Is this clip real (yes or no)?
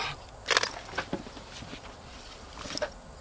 yes